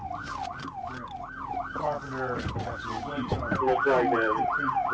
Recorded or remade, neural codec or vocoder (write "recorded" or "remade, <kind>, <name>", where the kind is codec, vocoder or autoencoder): recorded